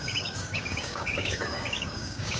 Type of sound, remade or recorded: remade